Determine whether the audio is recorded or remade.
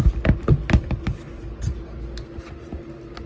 recorded